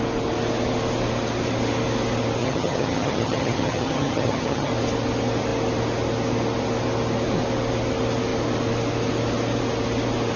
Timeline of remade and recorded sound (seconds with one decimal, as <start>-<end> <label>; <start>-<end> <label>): 0.0-2.4 recorded; 2.4-4.7 remade; 4.7-10.4 recorded